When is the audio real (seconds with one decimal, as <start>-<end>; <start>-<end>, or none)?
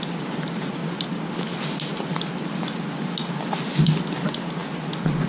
0.0-5.3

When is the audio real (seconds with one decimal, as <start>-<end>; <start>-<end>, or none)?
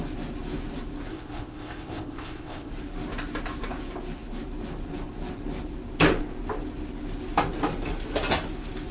0.0-1.1; 2.7-8.9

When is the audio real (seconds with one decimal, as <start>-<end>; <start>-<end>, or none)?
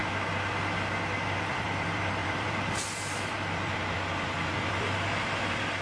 0.0-1.5